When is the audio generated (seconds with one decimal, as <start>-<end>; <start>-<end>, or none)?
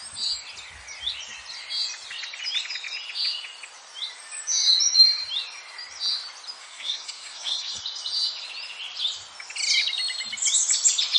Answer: 6.6-7.8